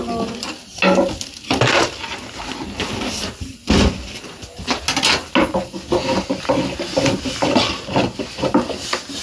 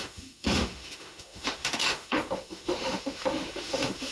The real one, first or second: first